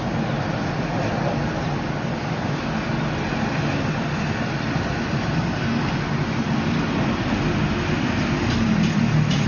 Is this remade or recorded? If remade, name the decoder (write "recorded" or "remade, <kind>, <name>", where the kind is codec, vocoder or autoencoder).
recorded